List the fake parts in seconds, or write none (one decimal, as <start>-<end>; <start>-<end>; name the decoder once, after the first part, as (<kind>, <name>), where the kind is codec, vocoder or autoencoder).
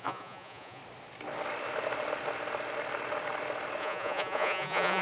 0.0-0.8 (vocoder, Vocos); 3.8-5.0